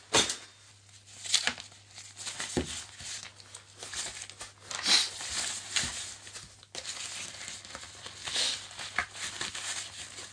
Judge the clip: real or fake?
real